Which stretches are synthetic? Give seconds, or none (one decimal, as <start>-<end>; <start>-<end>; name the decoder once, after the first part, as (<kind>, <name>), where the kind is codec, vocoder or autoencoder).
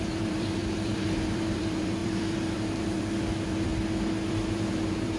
0.0-3.7 (vocoder, BigVGAN v2); 4.3-5.2